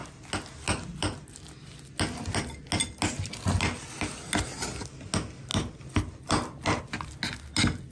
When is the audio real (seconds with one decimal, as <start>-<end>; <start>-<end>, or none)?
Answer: 0.0-7.9